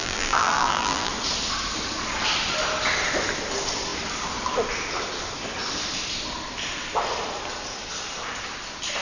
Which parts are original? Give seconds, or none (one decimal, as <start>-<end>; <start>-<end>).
1.1-9.0